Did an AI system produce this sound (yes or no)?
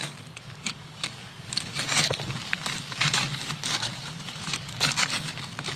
yes